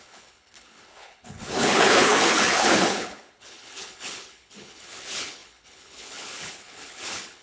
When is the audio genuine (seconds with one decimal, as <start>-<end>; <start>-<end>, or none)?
none